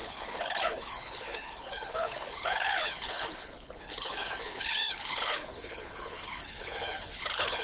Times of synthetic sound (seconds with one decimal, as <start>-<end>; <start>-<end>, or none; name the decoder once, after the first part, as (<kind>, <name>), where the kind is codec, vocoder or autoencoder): 0.0-7.6 (codec, HILCodec)